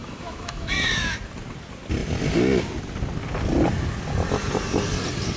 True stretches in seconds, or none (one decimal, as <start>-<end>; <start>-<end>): 1.2-5.4